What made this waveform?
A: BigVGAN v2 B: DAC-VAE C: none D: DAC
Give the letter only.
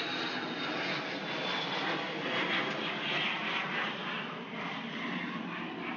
C